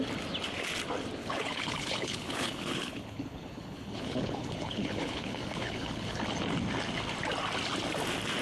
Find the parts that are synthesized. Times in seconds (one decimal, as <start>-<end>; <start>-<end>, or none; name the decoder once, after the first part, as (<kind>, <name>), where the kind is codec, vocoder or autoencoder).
1.2-6.2 (codec, HILCodec)